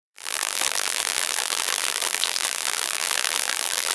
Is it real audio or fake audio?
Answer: fake